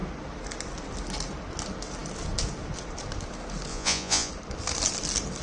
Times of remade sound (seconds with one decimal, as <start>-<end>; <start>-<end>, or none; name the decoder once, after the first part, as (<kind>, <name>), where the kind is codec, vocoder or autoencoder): 3.7-4.3 (vocoder, Vocos)